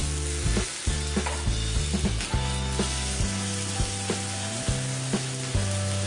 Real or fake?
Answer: real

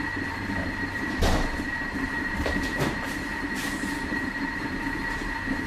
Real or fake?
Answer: fake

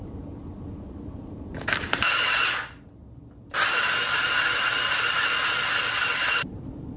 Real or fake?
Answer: fake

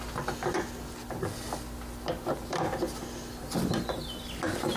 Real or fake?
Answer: real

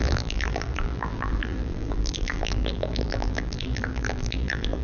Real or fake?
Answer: fake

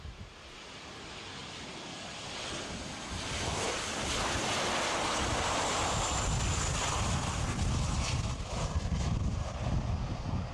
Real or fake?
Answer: real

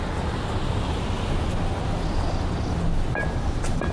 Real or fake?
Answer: real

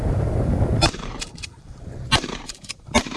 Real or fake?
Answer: fake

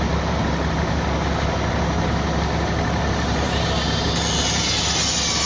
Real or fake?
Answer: real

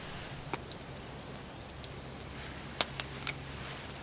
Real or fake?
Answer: real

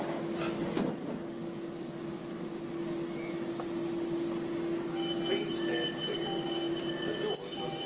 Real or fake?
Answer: real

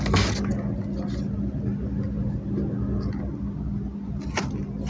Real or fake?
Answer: real